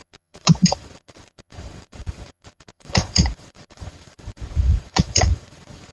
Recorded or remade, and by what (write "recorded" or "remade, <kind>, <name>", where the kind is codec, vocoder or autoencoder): remade, vocoder, Vocos